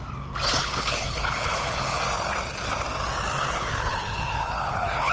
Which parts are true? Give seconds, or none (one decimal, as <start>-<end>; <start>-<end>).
0.0-0.6; 2.0-3.4